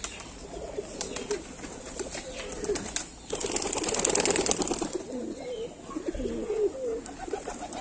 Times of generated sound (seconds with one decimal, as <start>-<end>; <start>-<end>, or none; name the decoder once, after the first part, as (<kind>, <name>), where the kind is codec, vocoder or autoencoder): none